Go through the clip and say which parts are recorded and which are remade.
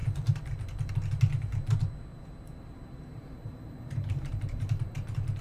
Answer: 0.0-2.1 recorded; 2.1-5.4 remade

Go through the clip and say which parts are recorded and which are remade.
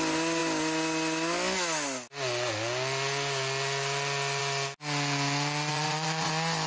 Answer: 0.0-5.7 recorded; 5.7-6.3 remade; 6.3-6.7 recorded